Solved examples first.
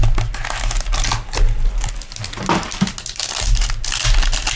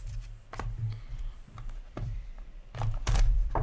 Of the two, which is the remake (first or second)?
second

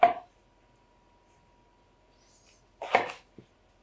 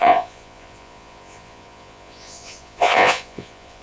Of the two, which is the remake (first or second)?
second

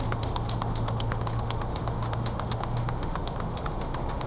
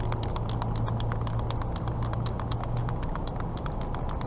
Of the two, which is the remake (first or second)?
first